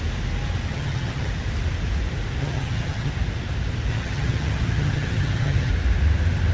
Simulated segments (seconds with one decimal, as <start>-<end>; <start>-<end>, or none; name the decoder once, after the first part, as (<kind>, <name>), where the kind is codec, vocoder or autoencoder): 0.7-1.3 (vocoder, HiFi-GAN); 2.4-3.1; 3.9-5.7